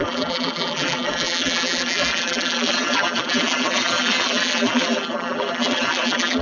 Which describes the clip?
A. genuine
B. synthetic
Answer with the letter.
B